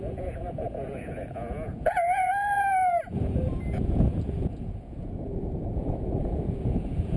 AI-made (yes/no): yes